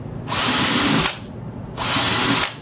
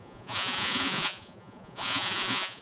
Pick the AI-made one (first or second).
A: second